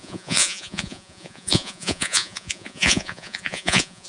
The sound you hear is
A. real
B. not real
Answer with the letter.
B